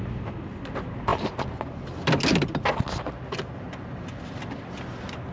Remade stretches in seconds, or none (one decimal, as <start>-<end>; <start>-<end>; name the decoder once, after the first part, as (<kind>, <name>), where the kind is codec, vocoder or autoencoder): none